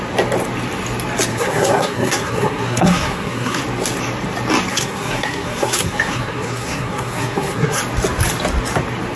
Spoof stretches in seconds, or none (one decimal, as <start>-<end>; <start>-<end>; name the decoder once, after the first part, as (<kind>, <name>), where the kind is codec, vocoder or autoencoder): 1.3-3.6 (codec, SNAC); 4.7-7.8